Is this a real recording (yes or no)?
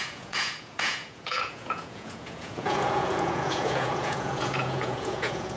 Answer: no